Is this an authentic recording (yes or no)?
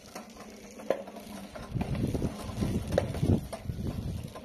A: yes